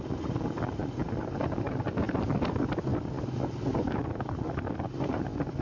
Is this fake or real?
real